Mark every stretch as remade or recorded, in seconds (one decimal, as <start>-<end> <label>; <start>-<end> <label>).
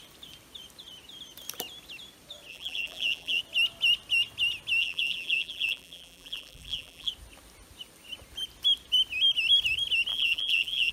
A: 0.0-2.5 recorded; 2.5-3.4 remade; 3.4-4.8 recorded; 4.8-7.1 remade; 7.1-10.1 recorded; 10.1-10.9 remade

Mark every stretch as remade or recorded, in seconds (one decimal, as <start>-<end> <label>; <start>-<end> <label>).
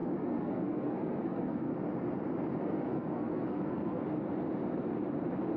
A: 0.0-1.7 remade; 1.7-2.6 recorded; 2.6-4.0 remade; 4.0-5.6 recorded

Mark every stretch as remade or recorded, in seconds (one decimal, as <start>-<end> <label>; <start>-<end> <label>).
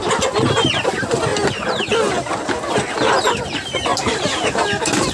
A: 0.0-3.9 recorded; 3.9-5.1 remade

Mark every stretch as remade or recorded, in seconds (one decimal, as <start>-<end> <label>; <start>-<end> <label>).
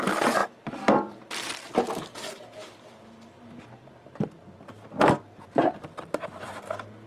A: 0.0-7.1 recorded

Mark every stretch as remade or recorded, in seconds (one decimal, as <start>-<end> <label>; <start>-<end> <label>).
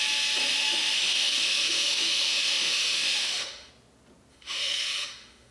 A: 0.0-0.4 recorded; 0.4-3.7 remade; 3.7-4.3 recorded; 4.3-5.5 remade